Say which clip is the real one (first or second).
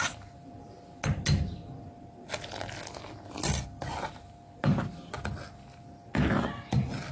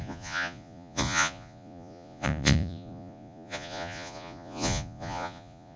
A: first